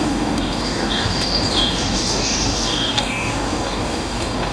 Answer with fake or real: fake